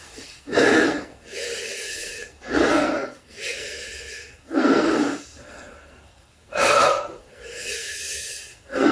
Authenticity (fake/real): fake